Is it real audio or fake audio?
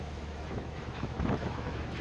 fake